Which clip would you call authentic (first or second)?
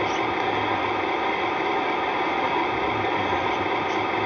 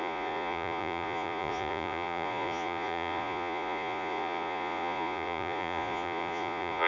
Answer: first